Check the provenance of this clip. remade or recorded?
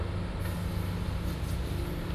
recorded